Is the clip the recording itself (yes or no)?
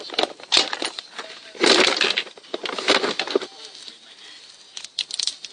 yes